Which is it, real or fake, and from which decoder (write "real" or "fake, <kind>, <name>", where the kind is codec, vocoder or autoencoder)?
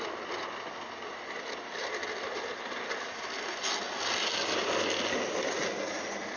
real